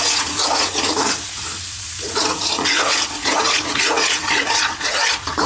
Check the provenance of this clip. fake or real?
fake